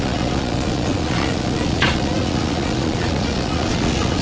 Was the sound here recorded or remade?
remade